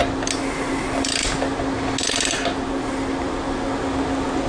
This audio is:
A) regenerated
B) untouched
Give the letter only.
B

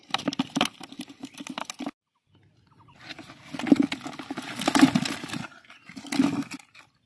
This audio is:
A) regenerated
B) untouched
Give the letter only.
B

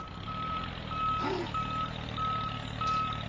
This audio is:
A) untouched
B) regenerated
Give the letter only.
A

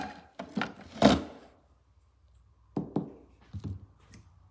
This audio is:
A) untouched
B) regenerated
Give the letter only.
A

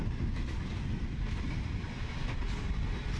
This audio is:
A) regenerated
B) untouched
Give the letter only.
B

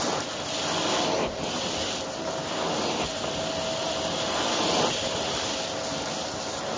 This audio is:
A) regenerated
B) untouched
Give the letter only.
B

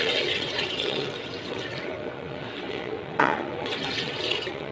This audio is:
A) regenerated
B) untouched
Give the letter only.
A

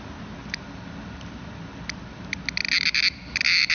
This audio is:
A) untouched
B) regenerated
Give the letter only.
A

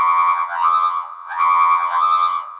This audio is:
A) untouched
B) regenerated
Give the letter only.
B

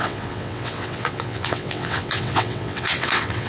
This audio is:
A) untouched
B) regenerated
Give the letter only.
B